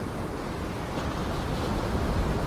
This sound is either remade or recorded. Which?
recorded